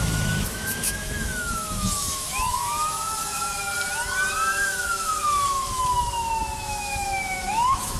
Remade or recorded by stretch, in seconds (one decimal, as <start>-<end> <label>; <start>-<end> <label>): 0.0-3.7 remade; 3.7-4.3 recorded; 4.3-8.0 remade